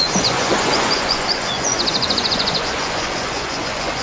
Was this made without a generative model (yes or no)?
no